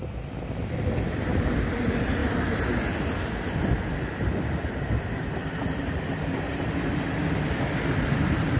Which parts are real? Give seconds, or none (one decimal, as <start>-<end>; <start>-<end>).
0.0-8.6